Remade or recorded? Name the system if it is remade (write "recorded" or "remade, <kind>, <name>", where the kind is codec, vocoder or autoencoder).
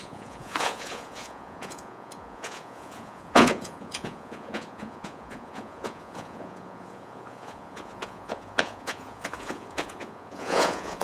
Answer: remade, vocoder, Vocos